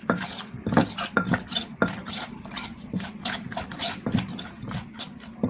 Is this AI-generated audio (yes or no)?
no